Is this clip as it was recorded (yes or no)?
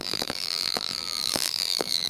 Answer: no